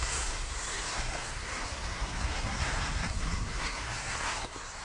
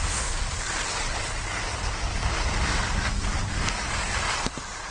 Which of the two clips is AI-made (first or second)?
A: first